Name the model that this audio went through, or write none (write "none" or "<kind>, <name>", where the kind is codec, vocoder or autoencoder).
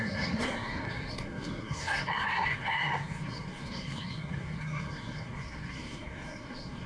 codec, SNAC